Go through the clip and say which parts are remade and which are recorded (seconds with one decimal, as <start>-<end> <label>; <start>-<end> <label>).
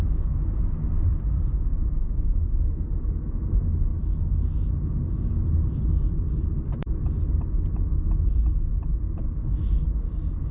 0.0-1.7 recorded; 1.7-2.6 remade; 2.6-10.5 recorded